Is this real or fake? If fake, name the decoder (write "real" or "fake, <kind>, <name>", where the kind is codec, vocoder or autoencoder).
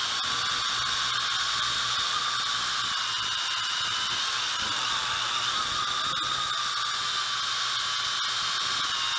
real